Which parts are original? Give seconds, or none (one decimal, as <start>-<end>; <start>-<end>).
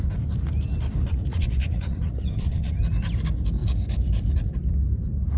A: 0.0-1.0; 2.8-5.4